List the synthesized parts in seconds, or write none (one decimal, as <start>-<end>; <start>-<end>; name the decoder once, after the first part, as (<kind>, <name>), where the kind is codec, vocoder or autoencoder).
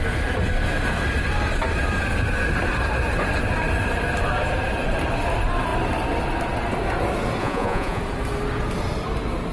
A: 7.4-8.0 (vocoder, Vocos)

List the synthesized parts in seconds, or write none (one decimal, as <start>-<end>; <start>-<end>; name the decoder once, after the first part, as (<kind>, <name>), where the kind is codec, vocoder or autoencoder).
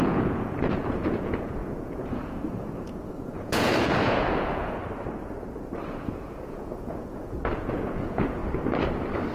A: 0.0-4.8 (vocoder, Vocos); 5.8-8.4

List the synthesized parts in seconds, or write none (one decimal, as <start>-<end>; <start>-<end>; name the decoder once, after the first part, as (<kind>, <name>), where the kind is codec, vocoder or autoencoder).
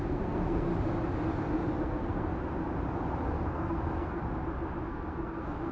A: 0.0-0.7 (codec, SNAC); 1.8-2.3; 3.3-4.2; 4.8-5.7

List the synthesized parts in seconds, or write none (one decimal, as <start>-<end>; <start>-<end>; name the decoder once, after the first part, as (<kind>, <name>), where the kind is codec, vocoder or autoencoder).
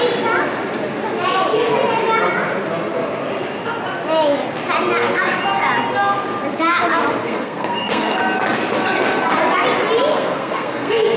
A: 7.2-8.2 (codec, SNAC); 10.1-11.2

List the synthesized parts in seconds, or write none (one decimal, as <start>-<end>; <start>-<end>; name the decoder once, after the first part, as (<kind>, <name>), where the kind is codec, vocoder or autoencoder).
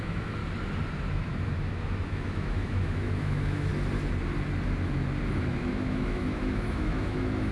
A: 0.0-0.4 (autoencoder, DAC-VAE); 1.1-3.7; 5.4-7.5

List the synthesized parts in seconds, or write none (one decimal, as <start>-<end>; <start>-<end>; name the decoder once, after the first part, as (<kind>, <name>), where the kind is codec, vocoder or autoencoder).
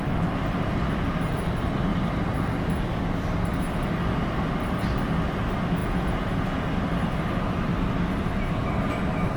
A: 5.8-6.6 (vocoder, Vocos)